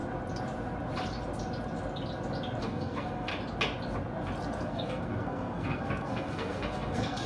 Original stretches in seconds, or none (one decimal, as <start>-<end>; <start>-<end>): 0.0-2.6; 3.3-4.6